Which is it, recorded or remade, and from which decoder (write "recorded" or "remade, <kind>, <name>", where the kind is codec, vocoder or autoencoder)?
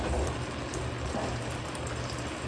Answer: recorded